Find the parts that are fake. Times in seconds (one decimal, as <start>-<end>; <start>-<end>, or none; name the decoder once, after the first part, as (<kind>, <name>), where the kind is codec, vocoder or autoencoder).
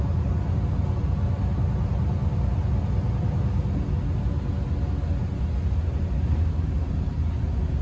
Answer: none